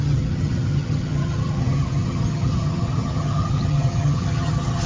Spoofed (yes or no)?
yes